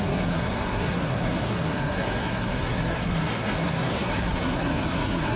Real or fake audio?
fake